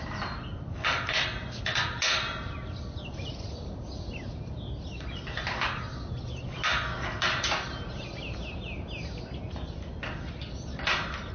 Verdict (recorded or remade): recorded